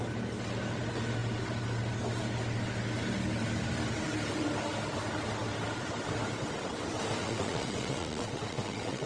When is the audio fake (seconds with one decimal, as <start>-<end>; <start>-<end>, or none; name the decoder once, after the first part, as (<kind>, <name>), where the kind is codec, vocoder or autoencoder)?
7.2-9.1 (vocoder, WaveNeXt)